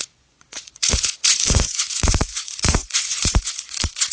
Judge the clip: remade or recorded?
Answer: remade